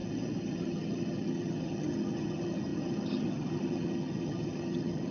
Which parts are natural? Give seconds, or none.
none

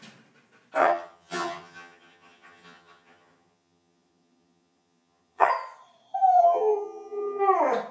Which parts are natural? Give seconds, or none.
0.0-0.8; 5.5-6.4; 7.4-7.9

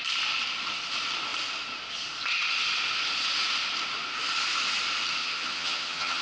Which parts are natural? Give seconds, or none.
0.0-5.2

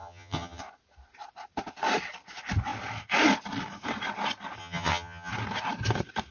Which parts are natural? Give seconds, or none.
0.6-4.6; 5.3-6.3

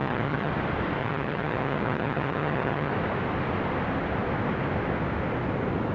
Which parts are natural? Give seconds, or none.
0.5-1.0; 2.9-5.9

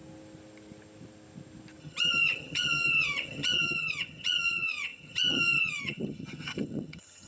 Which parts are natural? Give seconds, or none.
0.0-1.8